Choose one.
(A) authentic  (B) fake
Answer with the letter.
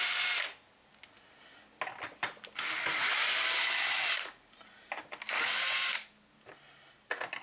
A